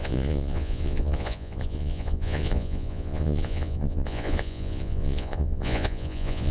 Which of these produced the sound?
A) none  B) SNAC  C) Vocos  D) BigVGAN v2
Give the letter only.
C